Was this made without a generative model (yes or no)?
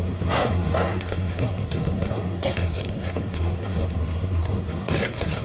no